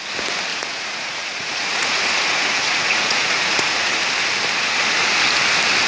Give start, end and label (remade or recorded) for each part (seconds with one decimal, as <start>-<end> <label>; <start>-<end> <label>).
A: 0.0-0.5 recorded; 0.5-4.0 remade; 4.0-5.9 recorded